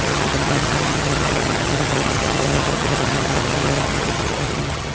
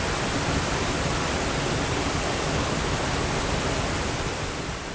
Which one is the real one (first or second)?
second